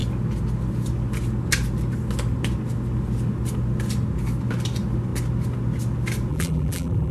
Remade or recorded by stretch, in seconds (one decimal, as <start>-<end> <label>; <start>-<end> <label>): 0.0-6.3 recorded; 6.3-7.1 remade